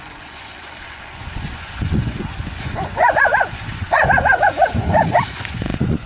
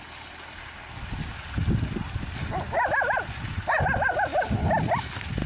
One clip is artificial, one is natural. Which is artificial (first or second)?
first